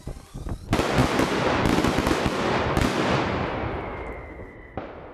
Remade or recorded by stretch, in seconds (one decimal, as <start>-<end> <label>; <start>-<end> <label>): 0.0-5.1 recorded